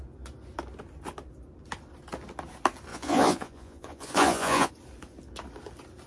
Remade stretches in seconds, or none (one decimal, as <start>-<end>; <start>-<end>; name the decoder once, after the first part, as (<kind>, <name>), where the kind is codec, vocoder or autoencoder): 2.9-4.7 (vocoder, Vocos)